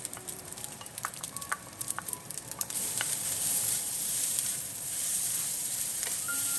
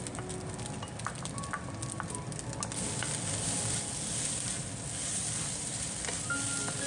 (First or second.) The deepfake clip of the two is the first